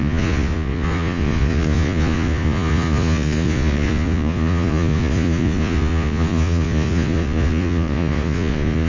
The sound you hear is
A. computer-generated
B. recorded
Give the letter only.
A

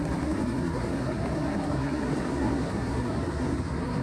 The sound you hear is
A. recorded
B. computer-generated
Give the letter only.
B